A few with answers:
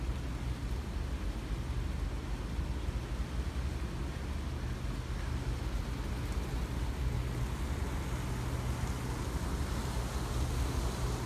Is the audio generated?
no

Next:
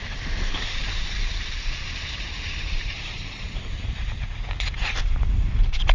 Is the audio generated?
yes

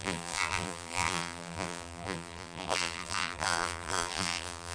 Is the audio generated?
yes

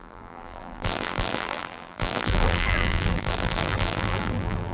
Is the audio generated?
yes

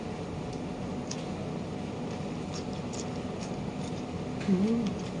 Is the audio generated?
no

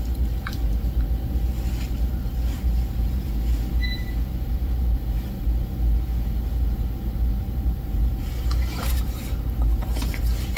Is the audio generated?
yes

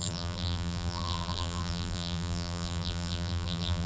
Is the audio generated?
yes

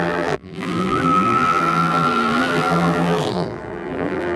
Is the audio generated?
yes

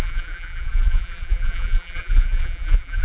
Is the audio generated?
yes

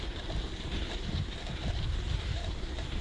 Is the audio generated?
yes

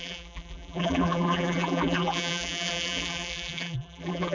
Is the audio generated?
yes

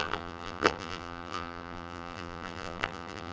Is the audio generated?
yes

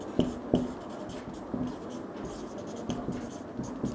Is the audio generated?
no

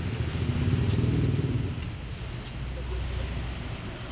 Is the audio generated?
no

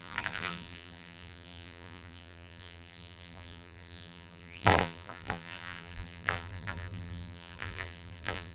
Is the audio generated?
yes